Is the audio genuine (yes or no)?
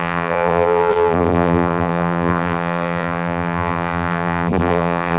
no